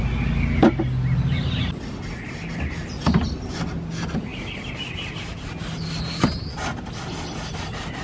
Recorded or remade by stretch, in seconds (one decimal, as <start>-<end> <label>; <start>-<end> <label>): 0.0-8.0 recorded